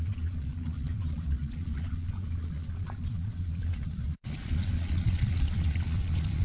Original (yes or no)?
no